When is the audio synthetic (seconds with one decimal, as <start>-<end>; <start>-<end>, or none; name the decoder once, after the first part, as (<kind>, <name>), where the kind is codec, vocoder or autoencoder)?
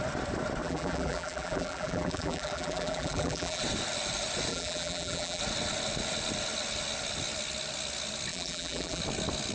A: 0.6-3.6 (vocoder, BigVGAN v2); 4.5-5.4; 8.3-9.0